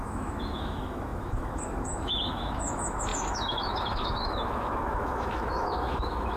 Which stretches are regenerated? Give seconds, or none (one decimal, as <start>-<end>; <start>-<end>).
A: 0.0-6.4